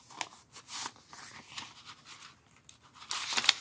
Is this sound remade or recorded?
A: recorded